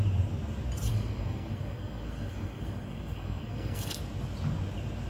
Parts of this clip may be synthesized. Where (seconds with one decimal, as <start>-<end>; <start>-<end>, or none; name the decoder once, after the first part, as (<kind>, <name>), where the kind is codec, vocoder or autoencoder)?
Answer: 0.9-4.0 (codec, SNAC)